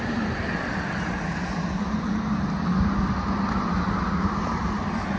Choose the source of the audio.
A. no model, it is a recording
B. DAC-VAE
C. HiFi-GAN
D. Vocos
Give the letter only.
A